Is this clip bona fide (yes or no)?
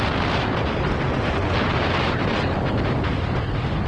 yes